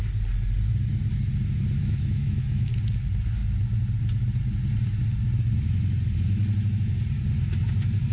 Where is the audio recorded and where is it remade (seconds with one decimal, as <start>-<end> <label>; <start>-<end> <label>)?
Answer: 0.0-1.8 recorded; 1.8-2.7 remade; 2.7-8.1 recorded